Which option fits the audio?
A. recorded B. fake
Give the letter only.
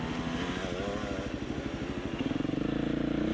A